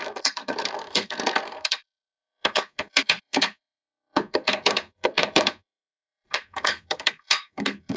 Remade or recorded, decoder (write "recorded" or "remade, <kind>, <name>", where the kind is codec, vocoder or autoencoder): remade, codec, SNAC